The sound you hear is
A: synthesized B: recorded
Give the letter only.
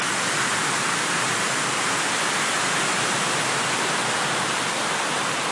B